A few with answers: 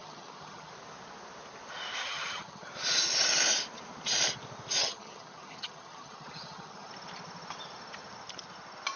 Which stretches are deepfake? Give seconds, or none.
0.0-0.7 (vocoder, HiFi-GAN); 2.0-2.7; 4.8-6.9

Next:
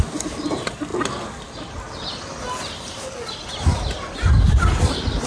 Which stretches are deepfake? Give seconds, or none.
none

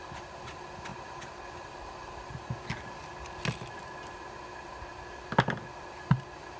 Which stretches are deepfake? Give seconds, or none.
none

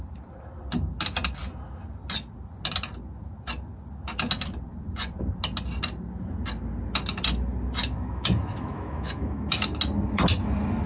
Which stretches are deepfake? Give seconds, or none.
7.8-9.7 (autoencoder, DAC-VAE)

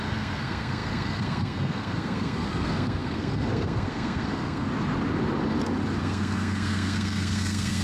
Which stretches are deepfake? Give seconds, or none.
0.0-4.7 (codec, SNAC); 6.0-7.8

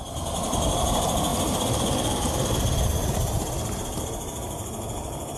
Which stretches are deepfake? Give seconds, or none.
none

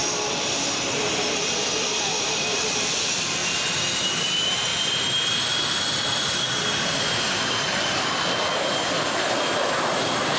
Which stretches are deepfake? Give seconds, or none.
0.0-3.4 (vocoder, BigVGAN v2); 4.2-10.4

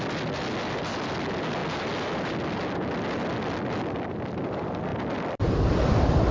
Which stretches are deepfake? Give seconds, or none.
none